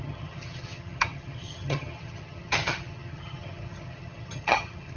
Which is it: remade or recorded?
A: remade